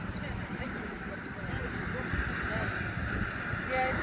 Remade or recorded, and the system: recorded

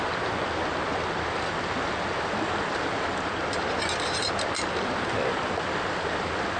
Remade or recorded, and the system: recorded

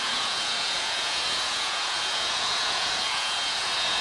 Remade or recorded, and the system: remade, vocoder, Vocos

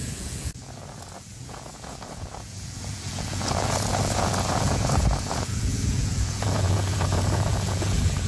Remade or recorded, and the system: remade, vocoder, Vocos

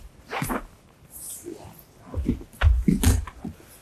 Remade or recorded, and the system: recorded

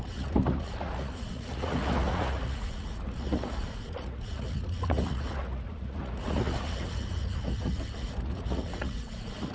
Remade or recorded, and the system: remade, vocoder, Vocos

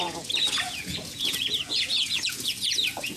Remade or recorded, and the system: remade, vocoder, Vocos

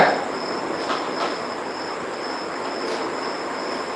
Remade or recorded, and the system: recorded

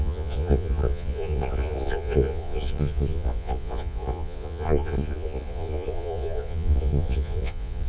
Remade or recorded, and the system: remade, vocoder, Vocos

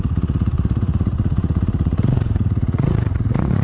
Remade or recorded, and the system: remade, vocoder, Vocos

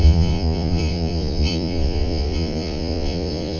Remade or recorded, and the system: remade, vocoder, Vocos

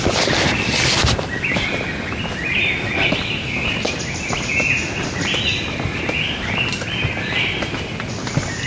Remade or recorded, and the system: recorded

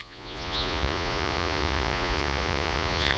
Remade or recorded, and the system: remade, vocoder, Vocos